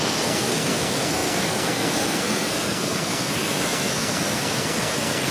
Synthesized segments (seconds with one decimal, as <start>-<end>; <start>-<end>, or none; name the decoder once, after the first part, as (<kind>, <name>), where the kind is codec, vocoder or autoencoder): 0.0-5.3 (codec, SNAC)

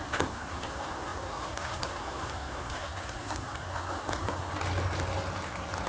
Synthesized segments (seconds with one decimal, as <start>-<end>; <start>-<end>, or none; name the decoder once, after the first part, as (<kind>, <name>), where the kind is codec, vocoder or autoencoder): 0.0-4.5 (codec, SNAC)